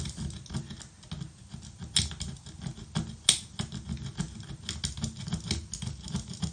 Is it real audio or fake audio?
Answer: real